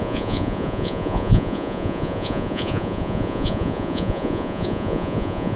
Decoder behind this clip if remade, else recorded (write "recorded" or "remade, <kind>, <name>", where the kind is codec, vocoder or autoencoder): remade, vocoder, Vocos